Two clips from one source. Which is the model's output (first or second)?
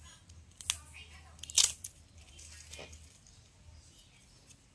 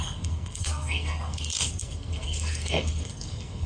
second